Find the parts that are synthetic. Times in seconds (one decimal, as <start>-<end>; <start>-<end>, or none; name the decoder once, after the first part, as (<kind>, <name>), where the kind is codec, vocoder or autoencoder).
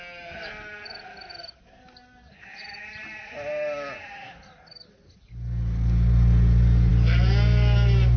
none